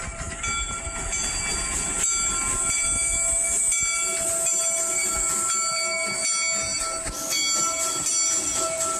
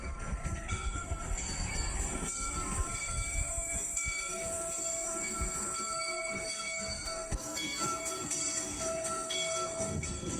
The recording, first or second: first